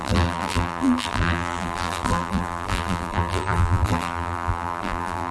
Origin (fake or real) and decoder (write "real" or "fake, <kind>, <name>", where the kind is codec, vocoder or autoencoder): fake, vocoder, BigVGAN v2